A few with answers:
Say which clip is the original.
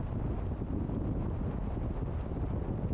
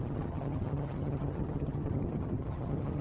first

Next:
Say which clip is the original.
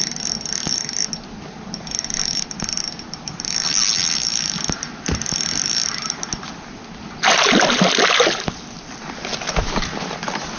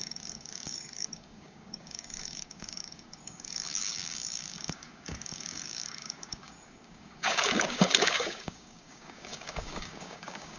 first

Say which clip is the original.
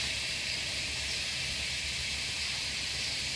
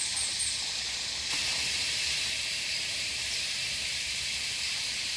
first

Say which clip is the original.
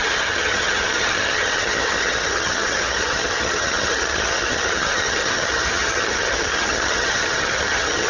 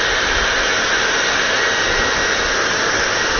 second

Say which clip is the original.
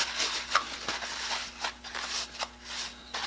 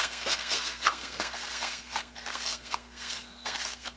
first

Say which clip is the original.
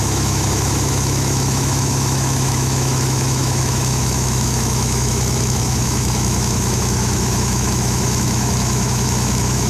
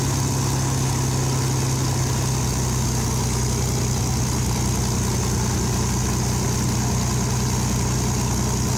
second